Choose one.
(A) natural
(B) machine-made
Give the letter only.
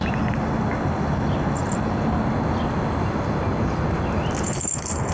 A